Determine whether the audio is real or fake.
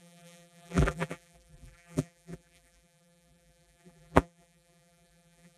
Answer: fake